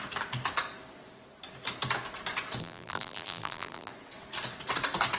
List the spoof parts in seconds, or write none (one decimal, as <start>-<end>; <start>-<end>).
2.6-3.9